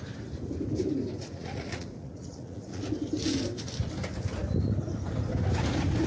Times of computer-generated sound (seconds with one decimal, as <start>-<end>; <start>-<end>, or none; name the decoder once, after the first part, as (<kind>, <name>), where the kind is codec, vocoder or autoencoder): 1.2-2.8 (vocoder, Vocos)